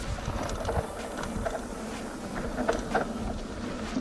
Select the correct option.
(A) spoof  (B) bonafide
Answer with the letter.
B